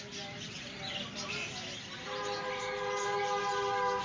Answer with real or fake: real